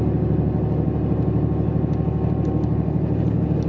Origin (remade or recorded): recorded